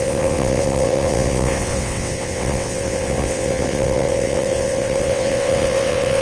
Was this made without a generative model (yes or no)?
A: no